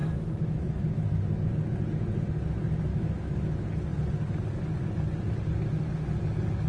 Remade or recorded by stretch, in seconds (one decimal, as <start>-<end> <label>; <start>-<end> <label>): 0.0-1.2 remade; 1.2-2.9 recorded; 2.9-3.5 remade; 3.5-6.7 recorded